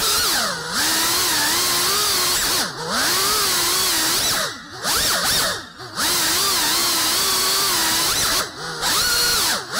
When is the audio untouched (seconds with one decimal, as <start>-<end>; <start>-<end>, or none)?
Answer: 0.0-9.8